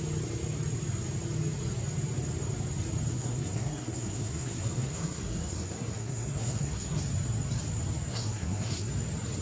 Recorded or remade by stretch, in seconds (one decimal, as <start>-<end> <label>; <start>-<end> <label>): 0.0-3.1 recorded; 3.1-7.0 remade; 7.0-8.1 recorded; 8.1-8.9 remade; 8.9-9.4 recorded